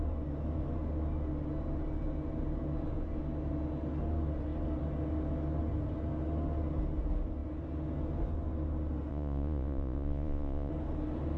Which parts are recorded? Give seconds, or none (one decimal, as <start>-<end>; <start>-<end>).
0.0-9.1; 10.7-11.4